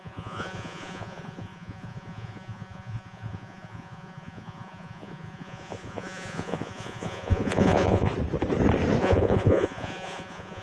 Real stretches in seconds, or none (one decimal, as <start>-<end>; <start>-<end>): 8.1-9.0